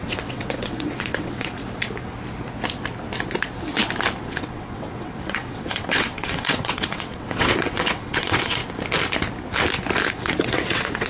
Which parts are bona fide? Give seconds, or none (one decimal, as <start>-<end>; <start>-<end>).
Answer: 1.6-4.2; 8.6-10.1